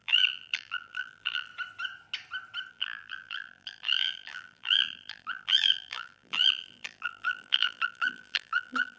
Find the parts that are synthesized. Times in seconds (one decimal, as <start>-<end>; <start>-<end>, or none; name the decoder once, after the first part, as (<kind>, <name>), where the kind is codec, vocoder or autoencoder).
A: 0.0-1.5 (vocoder, BigVGAN v2); 2.7-9.0